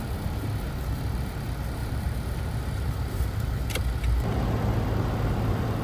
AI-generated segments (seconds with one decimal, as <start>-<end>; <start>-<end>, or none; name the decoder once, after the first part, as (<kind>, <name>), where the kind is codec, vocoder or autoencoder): 1.8-3.8 (vocoder, BigVGAN v2)